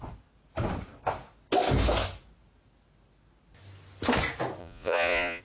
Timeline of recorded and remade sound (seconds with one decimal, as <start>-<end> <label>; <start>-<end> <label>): 0.0-4.6 recorded; 4.6-5.4 remade